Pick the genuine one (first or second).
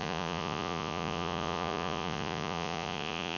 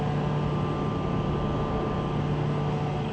second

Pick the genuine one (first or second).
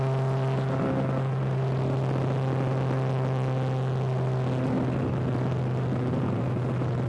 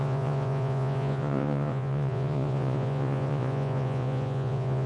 first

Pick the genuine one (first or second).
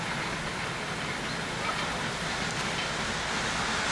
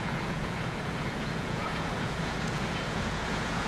first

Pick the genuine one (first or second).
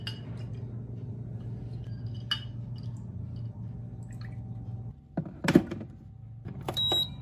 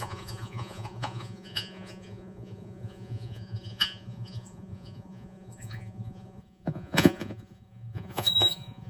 first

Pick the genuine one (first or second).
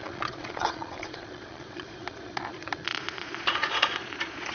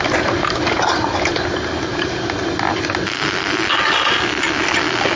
second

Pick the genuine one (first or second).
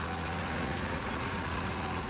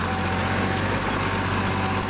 second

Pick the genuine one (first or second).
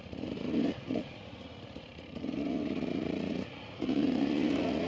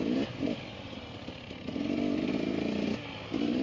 second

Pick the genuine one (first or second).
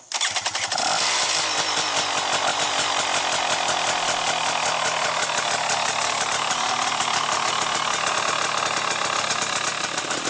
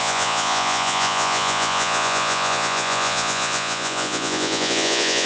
first